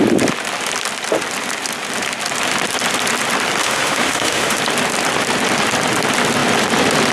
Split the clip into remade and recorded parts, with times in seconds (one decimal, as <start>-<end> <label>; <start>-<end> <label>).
0.0-3.6 recorded; 3.6-4.6 remade; 4.6-7.1 recorded